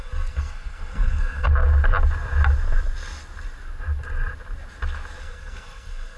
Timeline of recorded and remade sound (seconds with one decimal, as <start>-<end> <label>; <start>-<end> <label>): 0.0-1.5 remade; 1.5-5.2 recorded; 5.2-6.2 remade